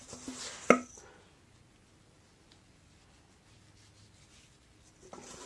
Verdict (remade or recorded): recorded